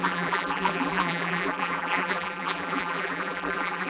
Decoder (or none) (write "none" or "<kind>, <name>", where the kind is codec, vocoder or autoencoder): vocoder, BigVGAN v2